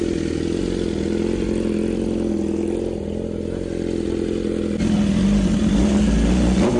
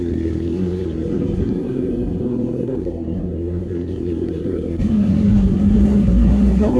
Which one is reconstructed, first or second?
second